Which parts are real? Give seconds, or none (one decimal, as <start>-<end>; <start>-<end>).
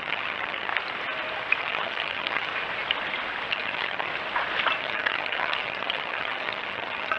0.7-1.6; 2.5-3.5; 4.1-4.8